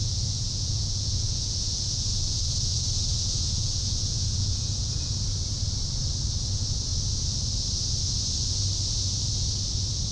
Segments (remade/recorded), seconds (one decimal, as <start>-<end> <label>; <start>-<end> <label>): 0.0-5.1 remade; 5.1-10.1 recorded